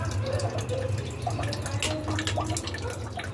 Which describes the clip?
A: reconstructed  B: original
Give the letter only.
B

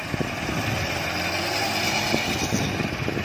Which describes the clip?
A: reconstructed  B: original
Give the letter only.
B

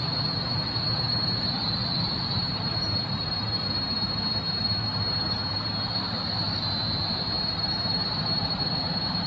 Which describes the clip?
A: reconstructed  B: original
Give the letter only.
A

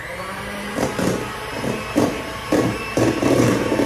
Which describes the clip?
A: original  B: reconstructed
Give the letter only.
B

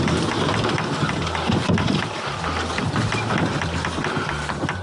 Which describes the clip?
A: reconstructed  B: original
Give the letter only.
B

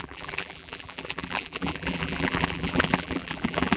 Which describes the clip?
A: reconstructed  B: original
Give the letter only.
A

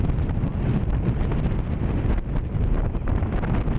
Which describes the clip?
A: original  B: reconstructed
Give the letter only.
A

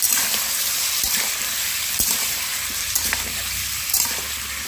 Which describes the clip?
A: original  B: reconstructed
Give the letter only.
B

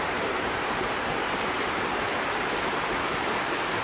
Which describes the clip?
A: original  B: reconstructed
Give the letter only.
B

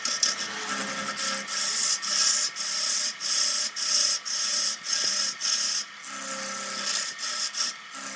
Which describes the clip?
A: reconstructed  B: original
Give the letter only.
B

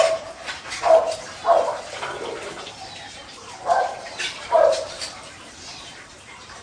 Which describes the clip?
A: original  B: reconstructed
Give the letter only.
B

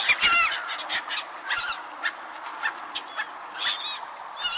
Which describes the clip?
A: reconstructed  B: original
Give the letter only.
B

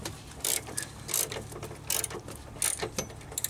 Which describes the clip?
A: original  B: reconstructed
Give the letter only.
A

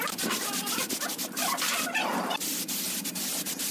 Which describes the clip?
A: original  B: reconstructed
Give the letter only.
A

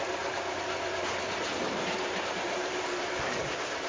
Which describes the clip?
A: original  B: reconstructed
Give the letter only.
B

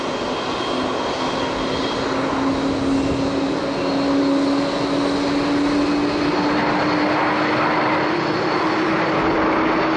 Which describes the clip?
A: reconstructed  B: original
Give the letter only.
B